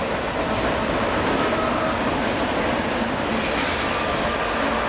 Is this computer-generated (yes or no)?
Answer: no